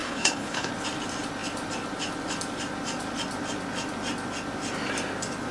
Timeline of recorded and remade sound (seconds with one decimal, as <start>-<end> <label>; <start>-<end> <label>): 0.0-0.7 remade; 0.7-5.5 recorded